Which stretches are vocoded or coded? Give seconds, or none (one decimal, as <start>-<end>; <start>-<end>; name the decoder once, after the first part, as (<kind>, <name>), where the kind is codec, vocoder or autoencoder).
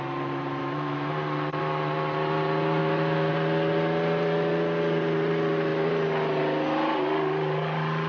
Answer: 0.6-1.1 (autoencoder, DAC-VAE); 2.8-3.3